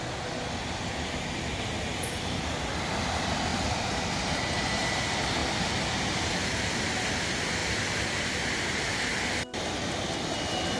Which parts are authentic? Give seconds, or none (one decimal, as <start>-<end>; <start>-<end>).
0.0-10.8